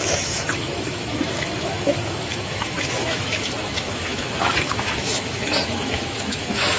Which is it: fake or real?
fake